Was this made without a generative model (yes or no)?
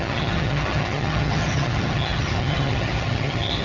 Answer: no